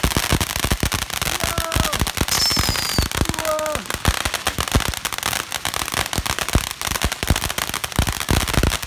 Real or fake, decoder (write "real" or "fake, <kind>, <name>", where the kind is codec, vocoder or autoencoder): real